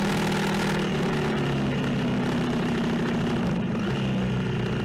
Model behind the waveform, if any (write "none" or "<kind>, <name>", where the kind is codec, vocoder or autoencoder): none